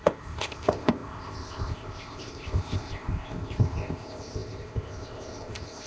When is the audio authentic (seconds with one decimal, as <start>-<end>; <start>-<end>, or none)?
none